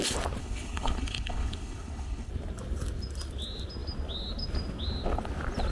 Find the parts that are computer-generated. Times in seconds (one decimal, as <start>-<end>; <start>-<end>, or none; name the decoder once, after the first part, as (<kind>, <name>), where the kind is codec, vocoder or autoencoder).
0.4-2.3 (codec, HILCodec)